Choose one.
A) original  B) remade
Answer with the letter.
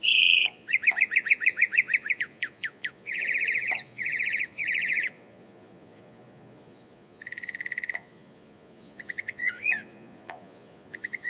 B